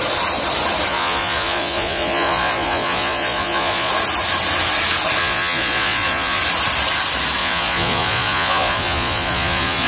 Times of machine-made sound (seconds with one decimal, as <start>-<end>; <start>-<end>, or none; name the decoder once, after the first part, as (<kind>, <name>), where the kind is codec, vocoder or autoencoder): 0.9-3.9 (vocoder, Vocos); 5.2-6.4; 7.4-9.9

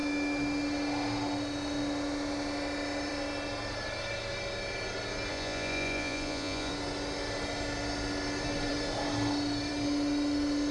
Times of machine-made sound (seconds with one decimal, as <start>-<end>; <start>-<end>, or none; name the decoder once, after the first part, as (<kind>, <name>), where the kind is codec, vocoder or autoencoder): 5.3-6.7 (vocoder, Vocos)

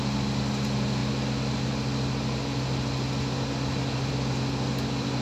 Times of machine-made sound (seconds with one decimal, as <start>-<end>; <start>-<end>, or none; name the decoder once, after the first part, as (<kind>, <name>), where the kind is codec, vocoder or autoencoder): none

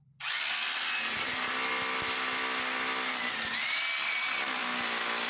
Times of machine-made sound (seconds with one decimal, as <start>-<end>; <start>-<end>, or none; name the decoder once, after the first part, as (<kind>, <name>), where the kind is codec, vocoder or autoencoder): none

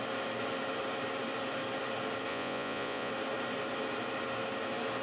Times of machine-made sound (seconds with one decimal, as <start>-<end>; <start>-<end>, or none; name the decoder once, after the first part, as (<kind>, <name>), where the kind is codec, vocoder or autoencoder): 2.3-3.1 (vocoder, Vocos)

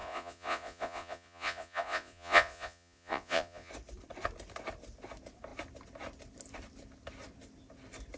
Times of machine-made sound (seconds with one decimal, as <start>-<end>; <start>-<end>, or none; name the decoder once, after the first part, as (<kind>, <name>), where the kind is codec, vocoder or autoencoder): 0.0-3.7 (vocoder, Vocos)

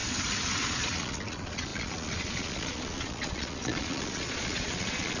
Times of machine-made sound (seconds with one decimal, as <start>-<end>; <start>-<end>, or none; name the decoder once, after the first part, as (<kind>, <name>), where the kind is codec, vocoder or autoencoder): 0.6-5.2 (vocoder, Vocos)